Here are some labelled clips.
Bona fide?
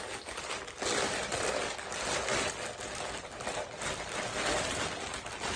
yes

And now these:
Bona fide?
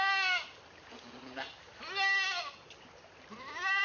yes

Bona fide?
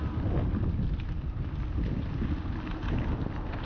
yes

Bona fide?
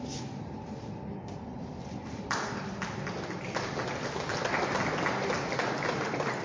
yes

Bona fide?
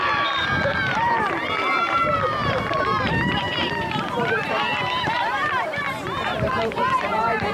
no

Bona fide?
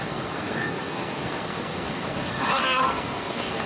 no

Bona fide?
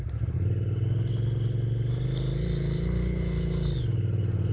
yes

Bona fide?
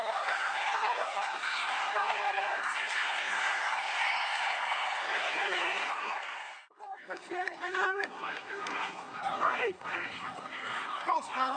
no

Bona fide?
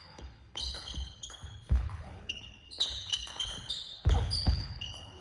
no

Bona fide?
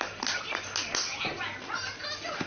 yes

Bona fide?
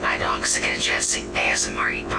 no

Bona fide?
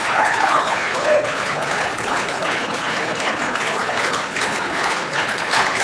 no